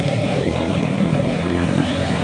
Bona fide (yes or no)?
no